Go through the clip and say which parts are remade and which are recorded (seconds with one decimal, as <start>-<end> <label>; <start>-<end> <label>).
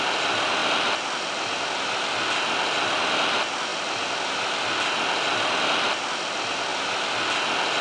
0.0-7.8 recorded